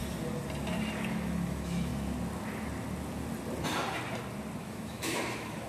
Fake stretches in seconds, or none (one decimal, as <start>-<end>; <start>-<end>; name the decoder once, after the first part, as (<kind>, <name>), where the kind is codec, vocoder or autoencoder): 1.1-1.9 (autoencoder, DAC-VAE); 4.6-5.7